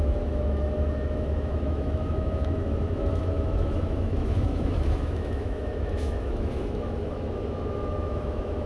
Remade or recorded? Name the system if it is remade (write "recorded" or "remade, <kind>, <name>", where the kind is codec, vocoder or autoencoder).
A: remade, autoencoder, DAC-VAE